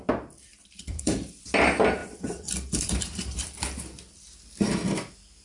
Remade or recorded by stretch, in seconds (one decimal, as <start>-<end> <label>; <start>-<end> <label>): 0.0-0.5 recorded; 0.5-1.5 remade; 1.5-2.0 recorded; 2.0-4.3 remade; 4.3-5.4 recorded